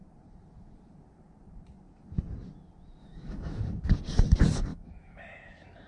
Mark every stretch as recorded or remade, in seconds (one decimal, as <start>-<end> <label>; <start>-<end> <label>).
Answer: 0.0-3.0 recorded; 3.0-3.6 remade; 3.6-4.7 recorded; 4.7-5.3 remade; 5.3-5.9 recorded